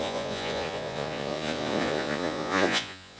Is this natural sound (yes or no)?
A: no